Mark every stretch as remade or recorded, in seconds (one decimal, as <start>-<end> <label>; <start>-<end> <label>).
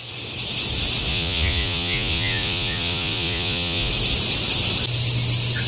0.0-1.1 recorded; 1.1-3.9 remade; 3.9-5.7 recorded